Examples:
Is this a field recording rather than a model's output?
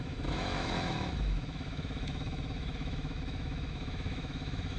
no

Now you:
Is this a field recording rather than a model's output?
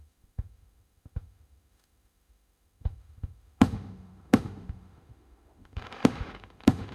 no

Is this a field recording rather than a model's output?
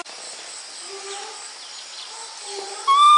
yes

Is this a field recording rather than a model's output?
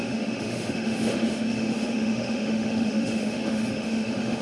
no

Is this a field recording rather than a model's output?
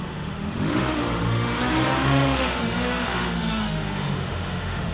no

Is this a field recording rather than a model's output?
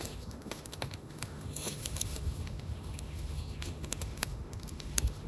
no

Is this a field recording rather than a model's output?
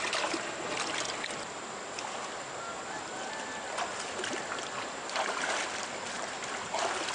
yes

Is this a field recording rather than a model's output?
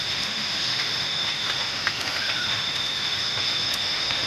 no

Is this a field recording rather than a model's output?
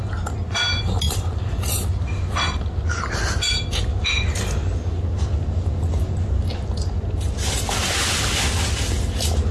yes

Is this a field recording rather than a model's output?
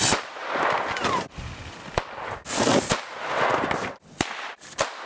yes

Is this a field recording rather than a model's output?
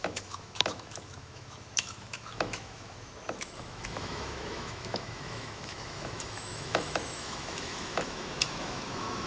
no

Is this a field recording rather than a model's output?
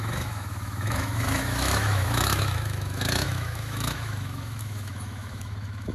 no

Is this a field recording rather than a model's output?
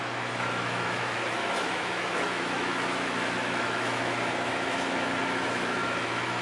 no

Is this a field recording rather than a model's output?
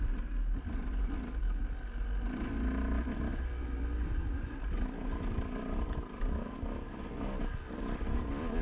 yes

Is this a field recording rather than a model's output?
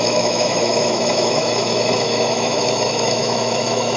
no